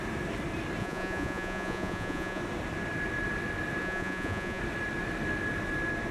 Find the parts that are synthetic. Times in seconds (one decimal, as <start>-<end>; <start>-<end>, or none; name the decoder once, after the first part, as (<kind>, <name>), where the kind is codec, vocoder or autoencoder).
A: 0.8-2.4 (vocoder, Vocos); 3.8-4.6